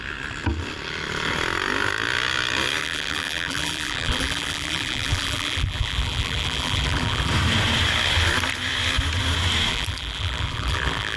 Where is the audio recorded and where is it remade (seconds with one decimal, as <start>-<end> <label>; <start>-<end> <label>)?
0.0-2.8 recorded; 2.8-7.3 remade; 7.3-9.7 recorded; 9.7-11.2 remade

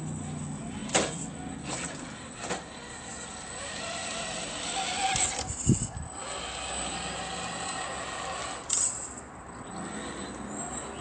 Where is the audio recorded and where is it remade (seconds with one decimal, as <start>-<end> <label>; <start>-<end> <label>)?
0.0-11.0 recorded

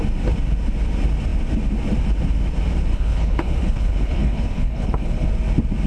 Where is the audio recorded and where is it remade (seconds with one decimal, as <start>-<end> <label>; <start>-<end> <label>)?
0.0-2.9 recorded; 2.9-5.3 remade; 5.3-5.9 recorded

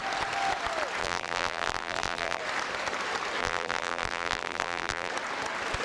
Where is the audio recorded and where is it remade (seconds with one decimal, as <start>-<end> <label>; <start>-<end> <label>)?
0.0-1.0 recorded; 1.0-2.4 remade; 2.4-3.4 recorded; 3.4-5.1 remade; 5.1-5.8 recorded